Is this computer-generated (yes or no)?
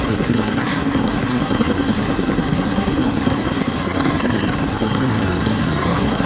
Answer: yes